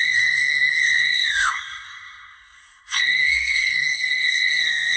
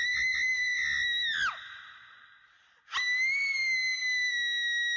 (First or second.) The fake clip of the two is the first